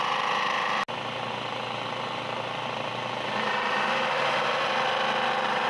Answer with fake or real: real